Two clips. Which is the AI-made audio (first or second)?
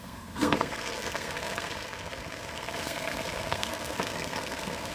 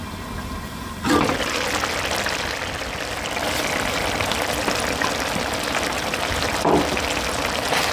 first